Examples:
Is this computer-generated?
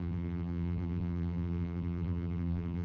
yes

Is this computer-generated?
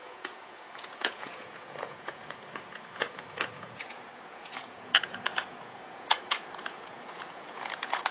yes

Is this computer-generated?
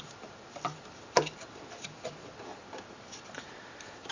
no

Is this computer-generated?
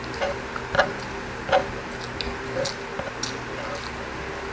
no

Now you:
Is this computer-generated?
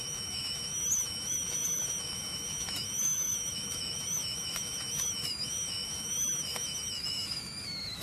yes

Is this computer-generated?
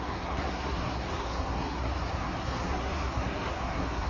yes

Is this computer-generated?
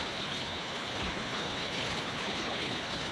yes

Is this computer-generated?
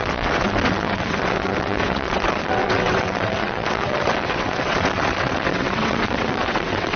yes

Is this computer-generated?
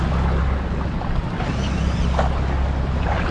no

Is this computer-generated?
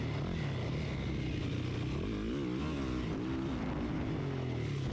no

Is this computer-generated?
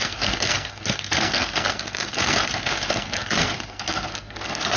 yes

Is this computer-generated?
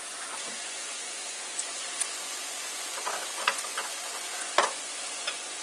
yes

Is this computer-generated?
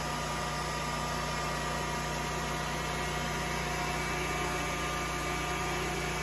no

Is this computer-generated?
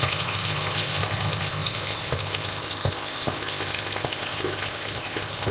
yes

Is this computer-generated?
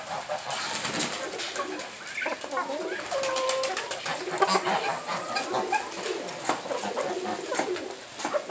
no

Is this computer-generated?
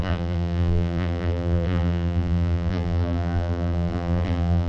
yes